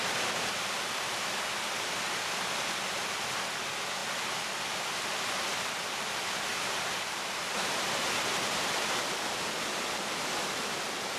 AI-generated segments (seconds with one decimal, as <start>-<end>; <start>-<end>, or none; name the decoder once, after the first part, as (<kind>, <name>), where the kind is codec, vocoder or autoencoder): 6.5-7.4 (vocoder, BigVGAN v2)